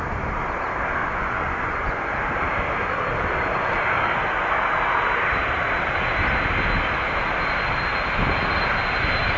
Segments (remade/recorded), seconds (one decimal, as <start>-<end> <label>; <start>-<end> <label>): 0.0-1.0 recorded; 1.0-2.1 remade; 2.1-9.4 recorded